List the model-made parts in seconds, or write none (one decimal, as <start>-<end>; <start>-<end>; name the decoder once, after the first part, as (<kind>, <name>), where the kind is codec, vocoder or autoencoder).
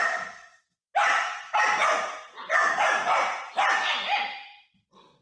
none